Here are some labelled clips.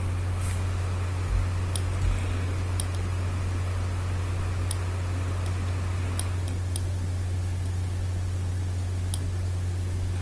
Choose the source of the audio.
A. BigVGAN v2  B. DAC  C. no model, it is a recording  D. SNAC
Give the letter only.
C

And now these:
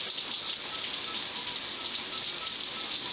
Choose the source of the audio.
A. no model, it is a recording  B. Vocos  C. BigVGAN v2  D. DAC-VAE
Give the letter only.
A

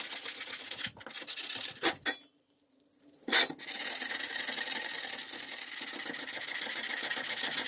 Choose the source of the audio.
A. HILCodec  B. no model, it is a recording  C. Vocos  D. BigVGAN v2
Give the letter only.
B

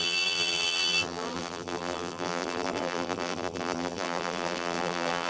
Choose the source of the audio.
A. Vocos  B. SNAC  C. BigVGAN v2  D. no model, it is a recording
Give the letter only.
C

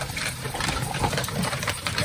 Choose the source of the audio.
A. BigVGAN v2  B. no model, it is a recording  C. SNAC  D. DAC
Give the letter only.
A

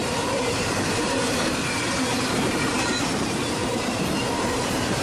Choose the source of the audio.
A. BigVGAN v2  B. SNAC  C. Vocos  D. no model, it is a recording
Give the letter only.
A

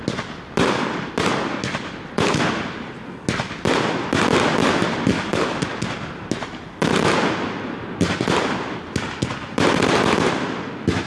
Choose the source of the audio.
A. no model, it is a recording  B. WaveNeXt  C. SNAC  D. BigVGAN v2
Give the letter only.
A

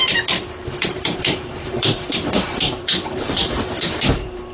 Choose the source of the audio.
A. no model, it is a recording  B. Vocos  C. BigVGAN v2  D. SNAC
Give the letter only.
C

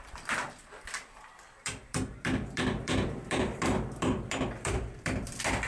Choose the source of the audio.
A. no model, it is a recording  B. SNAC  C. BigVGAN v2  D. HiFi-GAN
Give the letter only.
C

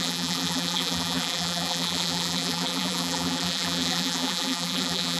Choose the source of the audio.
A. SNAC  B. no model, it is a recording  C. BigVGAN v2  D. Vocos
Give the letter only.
C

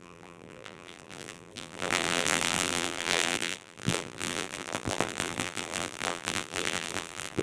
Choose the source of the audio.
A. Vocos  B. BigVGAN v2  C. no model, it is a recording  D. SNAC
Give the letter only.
B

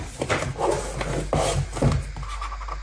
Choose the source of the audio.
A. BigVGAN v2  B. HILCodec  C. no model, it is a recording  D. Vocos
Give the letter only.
C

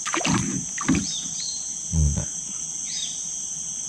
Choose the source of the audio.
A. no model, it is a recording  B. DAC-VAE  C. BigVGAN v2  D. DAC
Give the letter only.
C